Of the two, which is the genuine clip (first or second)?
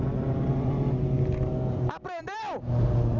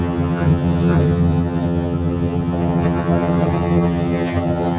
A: first